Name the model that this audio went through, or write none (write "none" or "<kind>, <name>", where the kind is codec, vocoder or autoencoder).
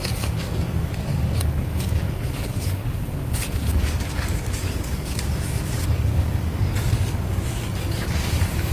codec, DAC